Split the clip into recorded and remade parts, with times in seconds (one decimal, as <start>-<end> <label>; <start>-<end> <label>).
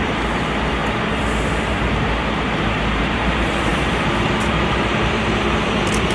0.0-0.8 remade; 0.8-2.2 recorded; 2.2-6.1 remade